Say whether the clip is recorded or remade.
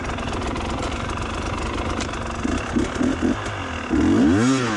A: recorded